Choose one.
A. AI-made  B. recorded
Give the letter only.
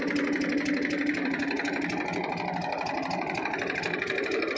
B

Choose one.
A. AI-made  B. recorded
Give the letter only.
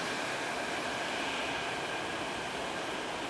B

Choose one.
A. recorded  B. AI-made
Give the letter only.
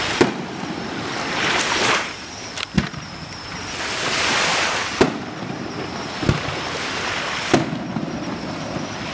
A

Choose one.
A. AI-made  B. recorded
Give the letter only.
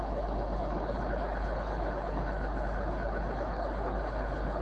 A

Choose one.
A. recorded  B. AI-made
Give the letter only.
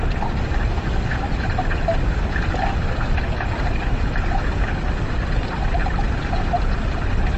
A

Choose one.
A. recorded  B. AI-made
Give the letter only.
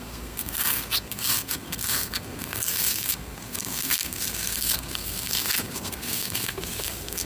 B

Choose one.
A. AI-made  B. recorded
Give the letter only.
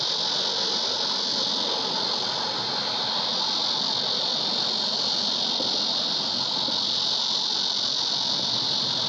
B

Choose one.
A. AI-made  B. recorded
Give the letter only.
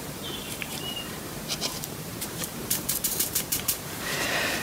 A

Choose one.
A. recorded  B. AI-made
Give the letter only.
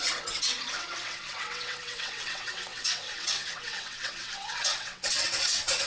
B